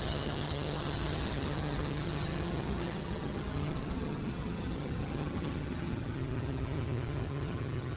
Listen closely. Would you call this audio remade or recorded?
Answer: remade